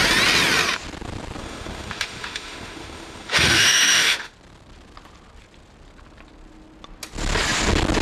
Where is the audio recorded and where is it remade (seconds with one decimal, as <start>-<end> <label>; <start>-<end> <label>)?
0.0-1.4 recorded; 1.4-4.3 remade; 4.3-8.0 recorded